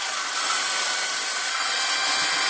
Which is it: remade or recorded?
recorded